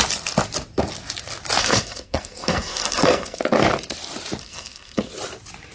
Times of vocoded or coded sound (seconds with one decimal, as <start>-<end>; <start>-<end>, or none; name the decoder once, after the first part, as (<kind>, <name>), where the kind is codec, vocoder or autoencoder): 1.6-3.4 (codec, SNAC); 4.4-5.1